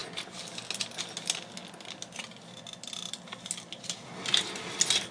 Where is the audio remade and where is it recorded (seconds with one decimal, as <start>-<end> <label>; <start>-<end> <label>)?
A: 0.0-5.1 recorded